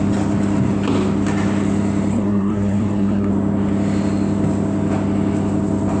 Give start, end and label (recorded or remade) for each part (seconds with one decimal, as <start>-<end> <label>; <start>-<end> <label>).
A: 0.0-2.1 recorded; 2.1-3.3 remade; 3.3-6.0 recorded